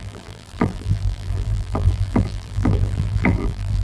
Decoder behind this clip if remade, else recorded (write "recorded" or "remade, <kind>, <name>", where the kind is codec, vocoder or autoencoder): remade, vocoder, BigVGAN v2